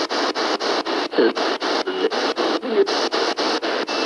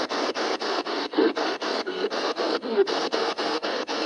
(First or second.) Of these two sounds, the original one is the first